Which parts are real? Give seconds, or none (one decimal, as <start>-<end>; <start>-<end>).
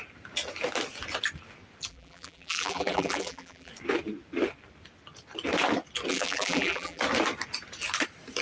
0.0-1.9; 3.7-6.1; 7.0-8.4